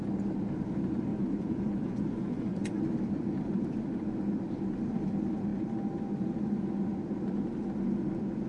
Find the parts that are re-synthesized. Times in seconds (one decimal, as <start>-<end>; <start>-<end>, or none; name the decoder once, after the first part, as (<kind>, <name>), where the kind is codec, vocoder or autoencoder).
1.1-2.8 (vocoder, Vocos)